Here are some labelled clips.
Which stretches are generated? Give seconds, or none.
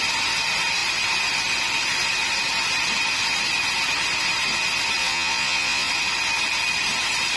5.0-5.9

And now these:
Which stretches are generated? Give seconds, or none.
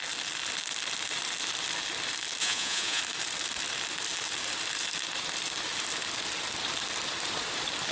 2.4-3.0